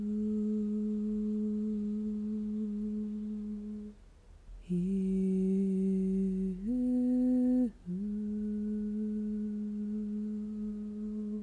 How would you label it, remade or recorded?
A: recorded